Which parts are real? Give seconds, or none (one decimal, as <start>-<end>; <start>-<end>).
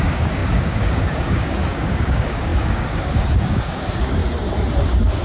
4.2-4.8